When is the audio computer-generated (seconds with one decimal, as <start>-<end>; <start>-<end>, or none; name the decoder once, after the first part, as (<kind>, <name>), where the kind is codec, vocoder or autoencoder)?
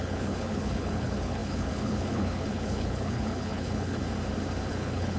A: 0.0-4.0 (codec, HILCodec); 4.7-5.2